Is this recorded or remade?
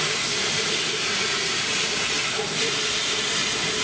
remade